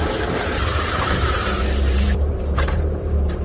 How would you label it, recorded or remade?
remade